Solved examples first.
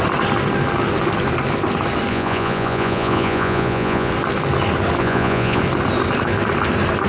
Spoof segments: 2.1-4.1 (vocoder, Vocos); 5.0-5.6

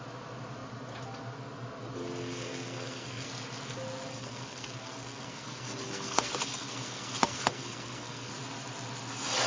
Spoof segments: 2.2-3.3 (codec, SNAC); 4.1-8.3

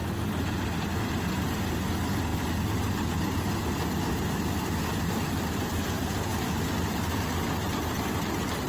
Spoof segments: none

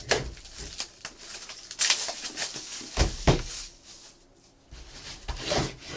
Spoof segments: 2.5-4.1 (codec, DAC)

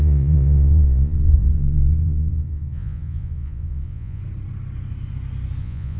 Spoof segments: 0.0-4.2 (vocoder, Vocos); 5.6-6.0

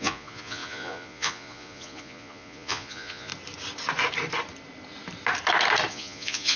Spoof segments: 0.0-3.3 (vocoder, Vocos); 5.9-6.6

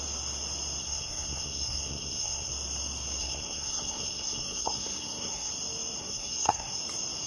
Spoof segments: 0.8-2.5 (codec, SNAC); 3.2-5.5; 6.0-6.8

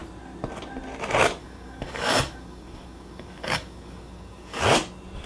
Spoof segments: 1.4-4.6 (codec, DAC)